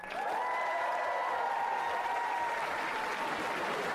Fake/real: real